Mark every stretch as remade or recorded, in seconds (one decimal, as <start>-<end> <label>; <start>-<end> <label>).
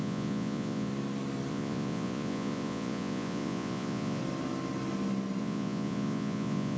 0.0-0.9 remade; 0.9-1.5 recorded; 1.5-4.2 remade; 4.2-5.4 recorded; 5.4-6.8 remade